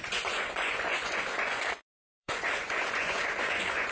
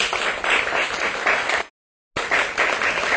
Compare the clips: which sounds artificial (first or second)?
first